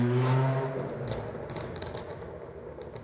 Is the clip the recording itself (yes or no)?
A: yes